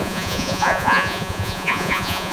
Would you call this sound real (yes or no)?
no